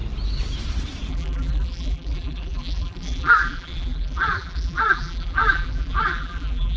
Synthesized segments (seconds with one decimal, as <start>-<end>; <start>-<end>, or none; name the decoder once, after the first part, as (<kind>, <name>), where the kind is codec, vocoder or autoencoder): 1.1-6.8 (vocoder, BigVGAN v2)